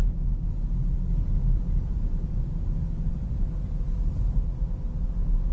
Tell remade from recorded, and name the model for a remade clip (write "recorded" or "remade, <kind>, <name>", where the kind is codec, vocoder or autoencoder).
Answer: recorded